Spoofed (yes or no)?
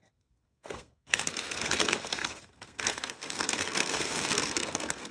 yes